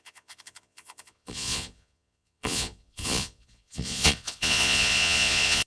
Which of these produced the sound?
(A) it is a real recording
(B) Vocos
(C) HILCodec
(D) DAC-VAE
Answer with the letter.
B